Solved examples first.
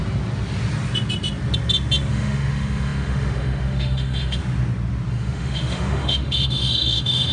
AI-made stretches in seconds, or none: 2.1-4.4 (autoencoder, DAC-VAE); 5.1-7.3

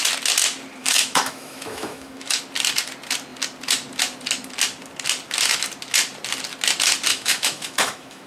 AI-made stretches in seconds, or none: 0.8-2.4 (autoencoder, DAC-VAE); 7.1-8.3

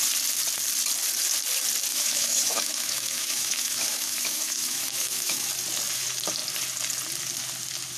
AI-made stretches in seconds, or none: 1.9-5.5 (autoencoder, DAC-VAE)

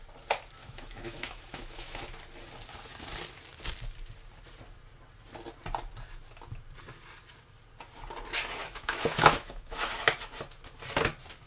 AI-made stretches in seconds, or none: 0.6-2.0 (autoencoder, DAC-VAE); 8.6-9.9

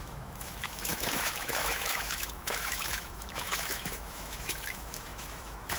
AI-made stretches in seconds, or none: 0.0-5.8 (autoencoder, DAC-VAE)

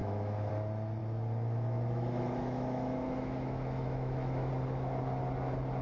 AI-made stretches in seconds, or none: 0.0-0.5 (autoencoder, DAC-VAE); 1.0-4.5

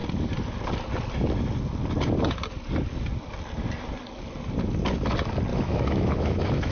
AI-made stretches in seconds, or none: 5.5-6.7 (autoencoder, DAC-VAE)

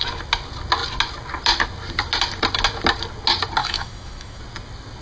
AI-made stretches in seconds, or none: 3.6-4.4 (autoencoder, DAC-VAE)